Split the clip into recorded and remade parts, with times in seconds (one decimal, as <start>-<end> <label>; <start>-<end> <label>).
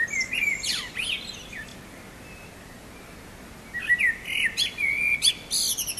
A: 0.0-6.0 recorded